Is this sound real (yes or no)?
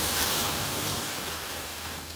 no